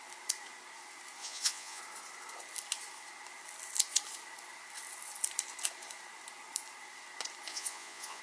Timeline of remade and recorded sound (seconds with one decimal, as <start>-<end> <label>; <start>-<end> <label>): 0.0-1.2 recorded; 1.2-1.8 remade; 1.8-7.5 recorded; 7.5-8.2 remade